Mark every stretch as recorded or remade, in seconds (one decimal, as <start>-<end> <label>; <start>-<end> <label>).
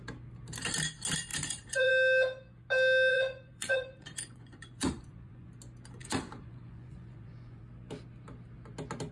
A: 0.0-1.3 recorded; 1.3-1.9 remade; 1.9-3.1 recorded; 3.1-5.5 remade; 5.5-6.0 recorded; 6.0-7.6 remade; 7.6-9.1 recorded